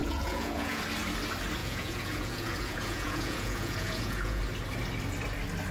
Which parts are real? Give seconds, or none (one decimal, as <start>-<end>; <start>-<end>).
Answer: 0.8-1.6; 4.4-5.7